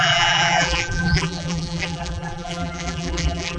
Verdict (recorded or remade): remade